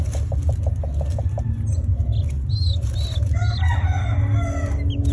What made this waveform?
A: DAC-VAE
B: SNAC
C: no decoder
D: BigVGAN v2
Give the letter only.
C